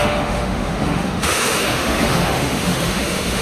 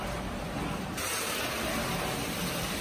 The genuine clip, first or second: second